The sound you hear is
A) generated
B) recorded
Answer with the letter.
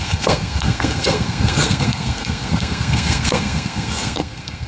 A